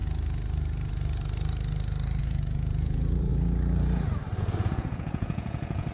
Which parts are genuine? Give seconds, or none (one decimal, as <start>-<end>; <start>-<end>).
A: 0.0-2.2; 3.3-4.4